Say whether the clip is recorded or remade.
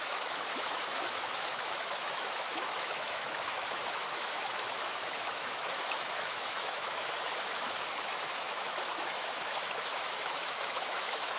remade